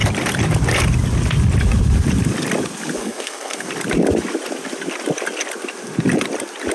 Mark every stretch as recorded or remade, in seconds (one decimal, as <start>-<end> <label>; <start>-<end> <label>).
0.0-3.0 recorded; 3.0-3.7 remade; 3.7-6.7 recorded